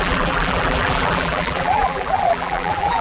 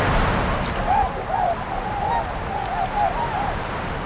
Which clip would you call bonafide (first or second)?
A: second